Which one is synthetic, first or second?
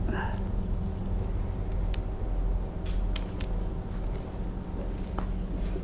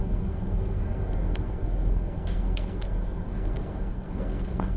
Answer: second